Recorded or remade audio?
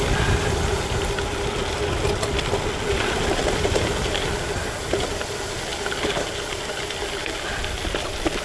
recorded